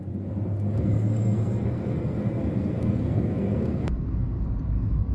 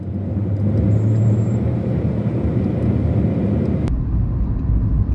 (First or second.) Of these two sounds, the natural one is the second